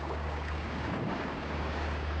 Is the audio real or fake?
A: fake